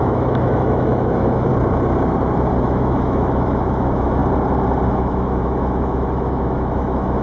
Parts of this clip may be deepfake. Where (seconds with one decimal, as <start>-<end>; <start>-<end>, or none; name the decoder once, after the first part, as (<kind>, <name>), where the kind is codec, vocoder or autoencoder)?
0.0-1.5 (autoencoder, DAC-VAE); 2.6-4.2; 4.9-7.2